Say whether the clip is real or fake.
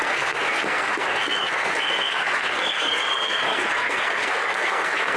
fake